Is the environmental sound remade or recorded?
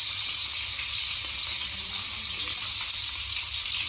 remade